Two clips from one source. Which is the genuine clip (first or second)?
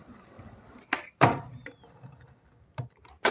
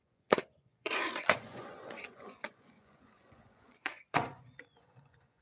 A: first